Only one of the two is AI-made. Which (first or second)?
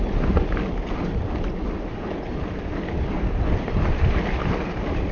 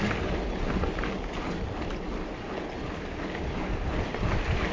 first